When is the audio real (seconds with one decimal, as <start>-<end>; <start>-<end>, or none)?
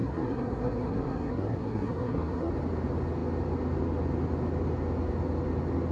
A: 2.5-5.9